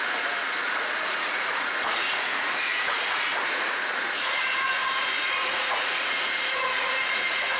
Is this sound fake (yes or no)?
yes